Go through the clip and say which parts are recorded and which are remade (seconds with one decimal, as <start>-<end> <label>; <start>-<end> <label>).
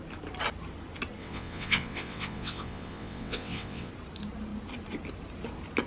0.0-1.2 recorded; 1.2-3.9 remade; 3.9-5.9 recorded